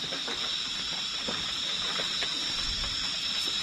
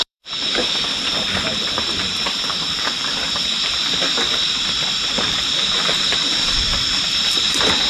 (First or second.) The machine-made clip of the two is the second